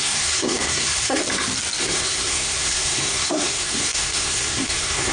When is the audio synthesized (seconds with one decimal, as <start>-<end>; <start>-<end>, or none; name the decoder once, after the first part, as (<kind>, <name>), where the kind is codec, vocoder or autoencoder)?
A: 0.0-1.2 (codec, SNAC); 1.8-5.1